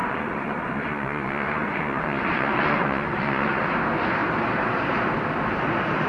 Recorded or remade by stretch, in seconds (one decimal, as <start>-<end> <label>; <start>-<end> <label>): 0.0-3.7 remade; 3.7-6.1 recorded